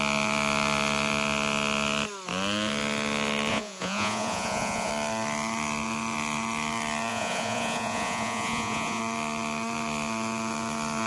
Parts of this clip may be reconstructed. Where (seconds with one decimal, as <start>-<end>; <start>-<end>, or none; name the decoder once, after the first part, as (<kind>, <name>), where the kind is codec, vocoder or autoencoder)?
3.5-4.9 (vocoder, Vocos); 7.1-9.0